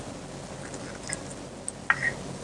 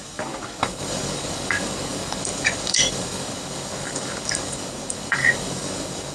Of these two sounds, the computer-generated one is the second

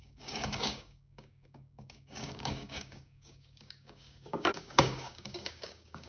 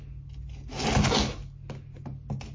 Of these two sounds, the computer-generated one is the first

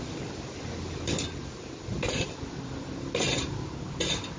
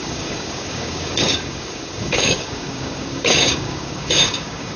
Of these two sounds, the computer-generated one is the second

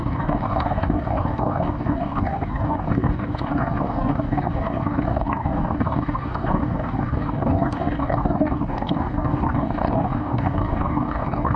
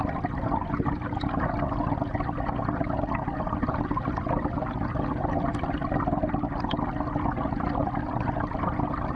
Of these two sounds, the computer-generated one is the first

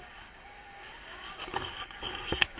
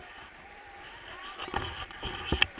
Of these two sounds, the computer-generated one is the first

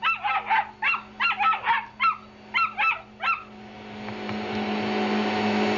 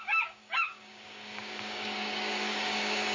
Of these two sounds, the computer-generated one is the second